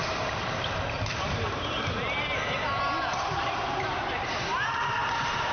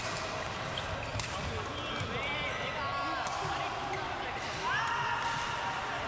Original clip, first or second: second